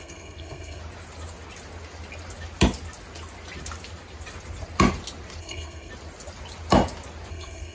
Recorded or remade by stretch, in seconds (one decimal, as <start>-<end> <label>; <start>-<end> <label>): 0.0-0.8 remade; 0.8-5.4 recorded; 5.4-5.9 remade; 5.9-7.3 recorded; 7.3-7.7 remade